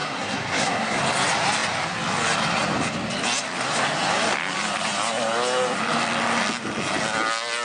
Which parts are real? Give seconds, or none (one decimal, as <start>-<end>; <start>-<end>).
1.0-7.6